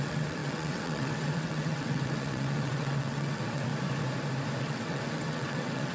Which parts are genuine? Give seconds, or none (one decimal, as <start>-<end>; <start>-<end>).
3.7-4.6